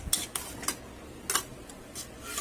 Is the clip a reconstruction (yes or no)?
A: no